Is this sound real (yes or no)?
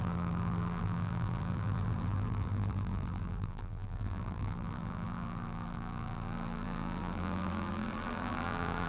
no